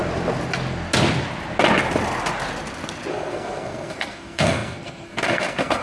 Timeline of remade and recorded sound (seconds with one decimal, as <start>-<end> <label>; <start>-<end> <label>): 0.0-3.1 recorded; 3.1-5.8 remade